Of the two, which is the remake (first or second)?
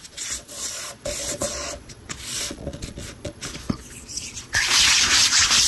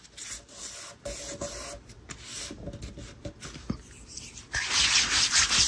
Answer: first